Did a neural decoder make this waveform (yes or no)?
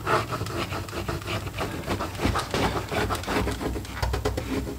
no